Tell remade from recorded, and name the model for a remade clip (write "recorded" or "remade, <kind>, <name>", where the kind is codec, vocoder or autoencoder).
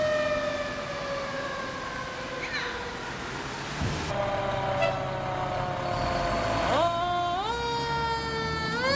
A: recorded